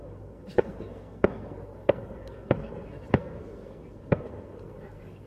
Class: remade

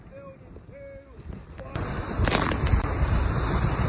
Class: recorded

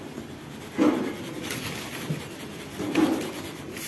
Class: recorded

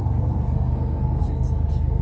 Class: remade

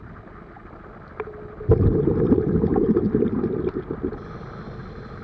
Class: recorded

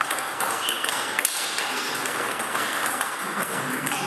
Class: remade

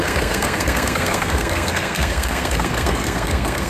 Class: remade